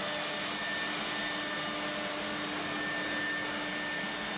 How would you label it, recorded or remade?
recorded